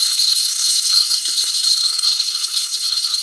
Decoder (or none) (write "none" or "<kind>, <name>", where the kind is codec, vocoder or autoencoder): codec, SNAC